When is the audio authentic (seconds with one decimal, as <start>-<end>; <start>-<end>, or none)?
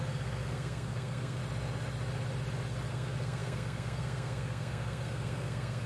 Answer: 1.4-2.9